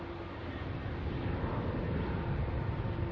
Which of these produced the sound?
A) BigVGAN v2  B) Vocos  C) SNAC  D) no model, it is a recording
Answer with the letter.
D